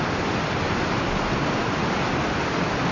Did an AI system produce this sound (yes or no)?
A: no